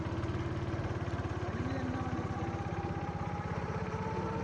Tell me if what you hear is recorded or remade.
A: recorded